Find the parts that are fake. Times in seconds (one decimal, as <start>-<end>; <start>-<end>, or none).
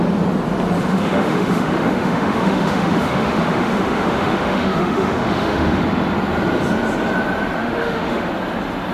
0.8-5.8; 7.6-8.3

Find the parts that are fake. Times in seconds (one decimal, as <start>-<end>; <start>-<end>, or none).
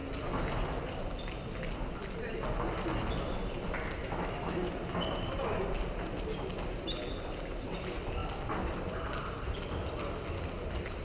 4.0-4.7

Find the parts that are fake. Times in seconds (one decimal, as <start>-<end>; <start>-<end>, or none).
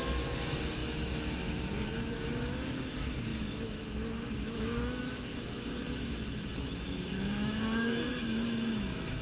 0.0-9.2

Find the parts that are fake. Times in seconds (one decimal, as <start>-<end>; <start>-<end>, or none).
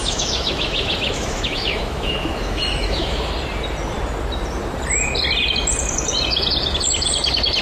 0.0-3.3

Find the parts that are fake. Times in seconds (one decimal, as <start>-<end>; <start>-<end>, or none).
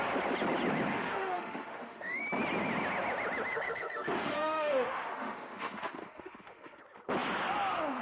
0.9-2.2; 3.5-6.8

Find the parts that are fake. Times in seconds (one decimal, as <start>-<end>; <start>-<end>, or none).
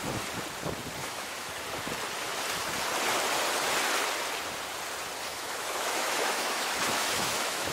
1.0-1.5; 5.3-7.7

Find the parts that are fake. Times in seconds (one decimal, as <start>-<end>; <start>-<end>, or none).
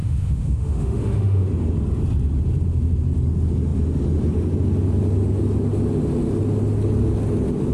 0.0-1.5